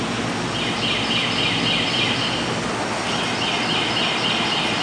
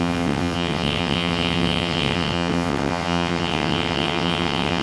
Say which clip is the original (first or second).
first